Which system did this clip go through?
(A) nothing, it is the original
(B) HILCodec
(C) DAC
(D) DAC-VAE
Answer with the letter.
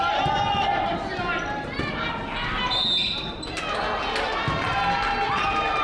A